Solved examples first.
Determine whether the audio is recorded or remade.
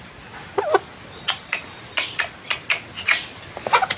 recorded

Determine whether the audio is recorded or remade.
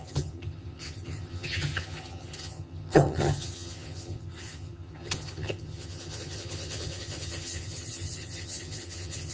remade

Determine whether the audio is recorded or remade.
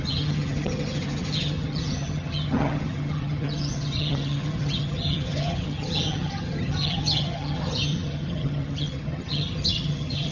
remade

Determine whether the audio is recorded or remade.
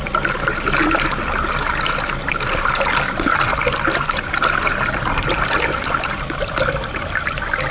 recorded